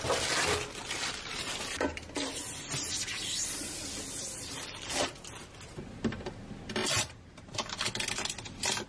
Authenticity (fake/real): real